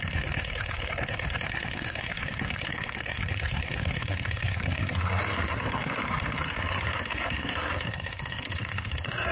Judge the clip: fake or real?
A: fake